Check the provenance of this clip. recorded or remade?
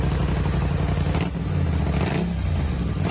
recorded